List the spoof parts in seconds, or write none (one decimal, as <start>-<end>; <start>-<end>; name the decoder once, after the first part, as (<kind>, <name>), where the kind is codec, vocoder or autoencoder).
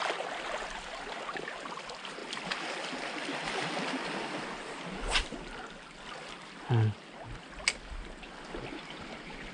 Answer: none